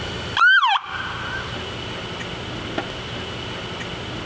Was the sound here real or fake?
real